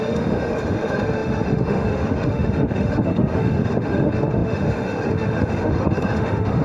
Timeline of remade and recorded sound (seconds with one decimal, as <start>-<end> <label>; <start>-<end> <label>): 0.0-6.6 remade